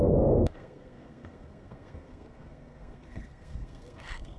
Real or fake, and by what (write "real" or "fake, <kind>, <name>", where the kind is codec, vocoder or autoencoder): fake, codec, SNAC